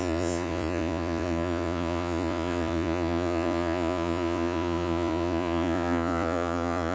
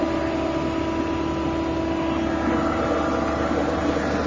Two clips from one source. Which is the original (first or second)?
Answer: second